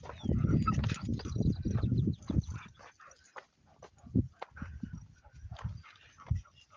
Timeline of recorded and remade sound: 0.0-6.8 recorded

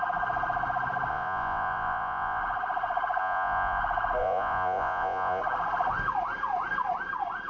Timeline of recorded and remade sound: 0.0-1.1 recorded; 1.1-2.4 remade; 2.4-3.2 recorded; 3.2-3.8 remade; 3.8-4.2 recorded; 4.2-5.4 remade; 5.4-7.5 recorded

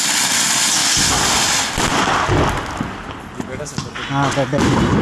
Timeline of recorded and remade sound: 0.0-5.0 recorded